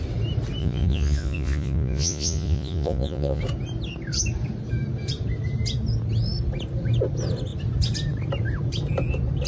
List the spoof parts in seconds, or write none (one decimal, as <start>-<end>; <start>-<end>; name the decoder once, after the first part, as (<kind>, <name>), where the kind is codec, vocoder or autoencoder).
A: 0.6-3.4 (vocoder, Vocos)

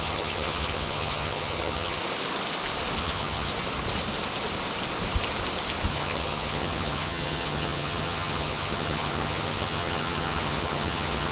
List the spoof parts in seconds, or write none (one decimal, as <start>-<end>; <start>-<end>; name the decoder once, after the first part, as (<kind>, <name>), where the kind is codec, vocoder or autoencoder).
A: 0.0-2.0 (vocoder, HiFi-GAN); 3.0-3.5; 5.9-11.3

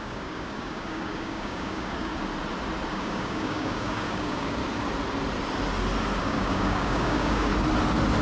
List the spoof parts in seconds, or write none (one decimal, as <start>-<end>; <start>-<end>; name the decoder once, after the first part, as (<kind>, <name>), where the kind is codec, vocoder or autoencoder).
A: 0.0-2.1 (codec, DAC); 2.9-4.6; 6.2-7.5

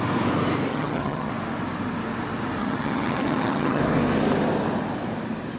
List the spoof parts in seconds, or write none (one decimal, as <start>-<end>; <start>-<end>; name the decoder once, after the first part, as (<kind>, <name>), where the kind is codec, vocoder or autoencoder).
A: 0.7-1.3 (vocoder, HiFi-GAN); 2.6-3.8

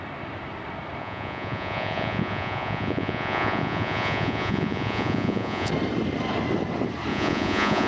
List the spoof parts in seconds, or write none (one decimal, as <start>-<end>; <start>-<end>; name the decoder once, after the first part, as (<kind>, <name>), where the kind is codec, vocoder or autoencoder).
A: 1.0-5.7 (vocoder, Vocos); 7.1-7.9